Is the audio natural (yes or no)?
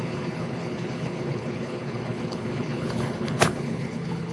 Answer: no